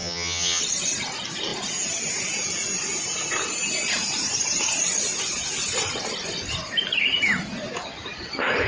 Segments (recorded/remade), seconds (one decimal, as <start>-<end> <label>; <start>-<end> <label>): 0.0-0.6 remade; 0.6-8.7 recorded